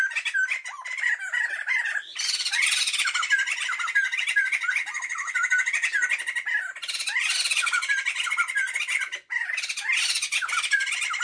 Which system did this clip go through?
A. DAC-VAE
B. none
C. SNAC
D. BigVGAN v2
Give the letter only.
B